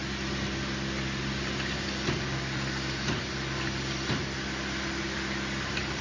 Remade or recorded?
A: recorded